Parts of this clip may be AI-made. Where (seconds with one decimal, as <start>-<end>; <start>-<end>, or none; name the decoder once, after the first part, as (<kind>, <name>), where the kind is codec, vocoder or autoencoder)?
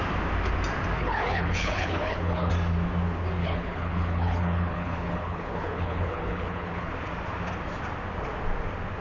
1.0-2.5 (codec, HILCodec); 3.4-6.9